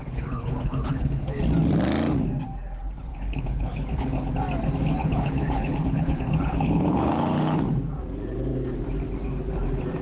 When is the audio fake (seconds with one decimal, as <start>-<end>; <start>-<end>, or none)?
0.0-1.4; 3.1-4.3; 5.0-7.6